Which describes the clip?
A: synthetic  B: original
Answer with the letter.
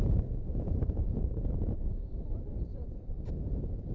A